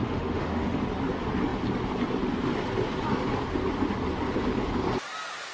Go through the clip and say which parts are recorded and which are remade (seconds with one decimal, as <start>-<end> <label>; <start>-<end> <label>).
0.0-0.8 remade; 0.8-5.5 recorded

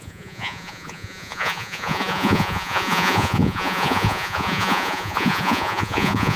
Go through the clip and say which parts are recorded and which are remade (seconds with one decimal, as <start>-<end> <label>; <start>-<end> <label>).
0.0-6.4 remade

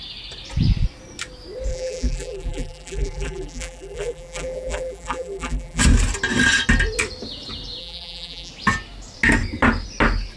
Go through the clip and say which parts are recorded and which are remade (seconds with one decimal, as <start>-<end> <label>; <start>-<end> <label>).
0.0-1.7 recorded; 1.7-5.8 remade; 5.8-7.8 recorded; 7.8-8.5 remade; 8.5-10.4 recorded

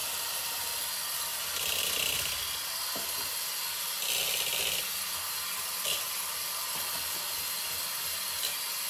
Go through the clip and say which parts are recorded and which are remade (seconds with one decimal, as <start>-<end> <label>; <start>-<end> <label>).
0.0-0.7 remade; 0.7-1.3 recorded; 1.3-1.8 remade; 1.8-8.9 recorded

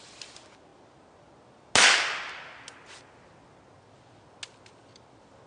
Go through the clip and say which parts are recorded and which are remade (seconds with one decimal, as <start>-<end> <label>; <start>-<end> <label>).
0.0-5.5 recorded